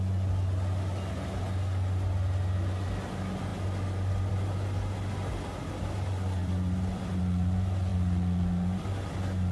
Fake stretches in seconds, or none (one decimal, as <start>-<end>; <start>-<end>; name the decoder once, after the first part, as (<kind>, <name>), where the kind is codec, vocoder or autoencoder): 6.4-7.2 (vocoder, BigVGAN v2); 7.9-9.1